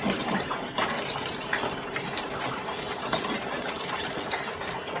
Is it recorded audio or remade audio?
remade